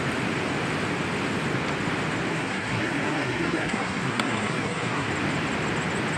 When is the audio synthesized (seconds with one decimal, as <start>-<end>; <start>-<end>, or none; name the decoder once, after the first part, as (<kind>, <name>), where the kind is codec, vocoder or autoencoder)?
2.3-5.1 (codec, SNAC)

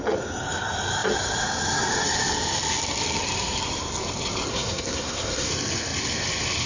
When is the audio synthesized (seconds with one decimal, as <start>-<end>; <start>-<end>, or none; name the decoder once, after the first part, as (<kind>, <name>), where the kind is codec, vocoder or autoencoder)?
4.5-5.5 (codec, SNAC)

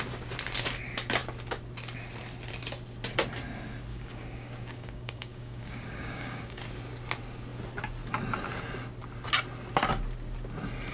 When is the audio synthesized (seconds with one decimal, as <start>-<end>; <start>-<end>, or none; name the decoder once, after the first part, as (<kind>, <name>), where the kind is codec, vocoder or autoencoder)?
3.9-6.6 (codec, DAC)

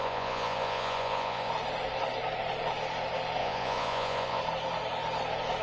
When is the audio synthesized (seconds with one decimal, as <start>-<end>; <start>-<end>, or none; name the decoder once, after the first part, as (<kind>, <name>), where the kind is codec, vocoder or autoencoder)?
0.0-1.5 (vocoder, Vocos); 3.4-4.4

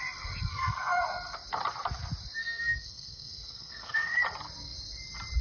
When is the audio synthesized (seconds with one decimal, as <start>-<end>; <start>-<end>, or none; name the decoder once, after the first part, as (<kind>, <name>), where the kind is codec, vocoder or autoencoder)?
0.5-1.0 (codec, SNAC); 2.4-4.2

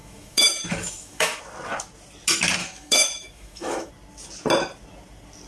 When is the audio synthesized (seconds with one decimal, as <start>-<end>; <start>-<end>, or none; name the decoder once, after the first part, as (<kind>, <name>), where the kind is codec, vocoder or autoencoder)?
0.0-1.4 (autoencoder, DAC-VAE); 2.6-3.9

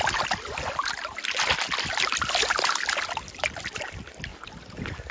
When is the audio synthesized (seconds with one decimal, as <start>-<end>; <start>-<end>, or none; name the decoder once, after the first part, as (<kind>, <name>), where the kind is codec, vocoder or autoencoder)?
none